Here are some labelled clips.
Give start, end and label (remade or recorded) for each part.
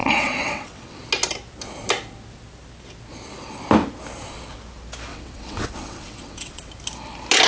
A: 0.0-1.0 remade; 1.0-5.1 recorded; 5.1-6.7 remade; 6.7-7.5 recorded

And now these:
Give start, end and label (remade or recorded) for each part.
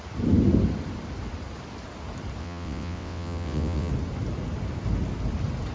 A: 0.0-2.4 recorded; 2.4-3.9 remade; 3.9-5.7 recorded